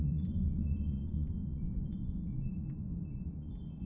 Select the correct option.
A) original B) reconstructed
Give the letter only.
B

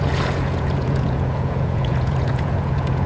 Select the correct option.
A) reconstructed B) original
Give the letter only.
A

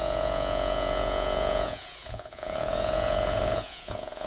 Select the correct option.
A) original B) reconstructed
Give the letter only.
B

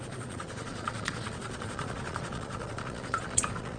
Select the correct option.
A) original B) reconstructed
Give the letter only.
B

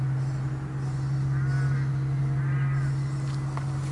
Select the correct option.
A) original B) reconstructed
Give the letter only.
A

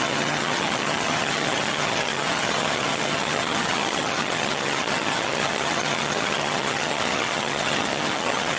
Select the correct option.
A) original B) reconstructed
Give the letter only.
B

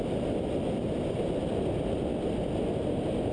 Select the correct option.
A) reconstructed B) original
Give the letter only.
B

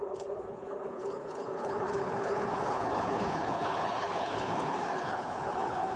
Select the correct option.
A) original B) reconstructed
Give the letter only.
B